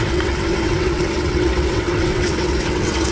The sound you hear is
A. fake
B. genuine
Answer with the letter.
A